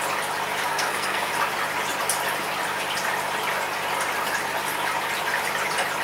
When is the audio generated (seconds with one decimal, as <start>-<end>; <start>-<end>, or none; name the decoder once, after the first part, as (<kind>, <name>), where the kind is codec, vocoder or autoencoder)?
0.7-1.3 (codec, SNAC)